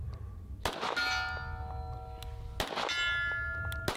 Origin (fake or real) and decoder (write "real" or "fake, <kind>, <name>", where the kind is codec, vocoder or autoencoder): real